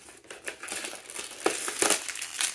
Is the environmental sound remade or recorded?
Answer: recorded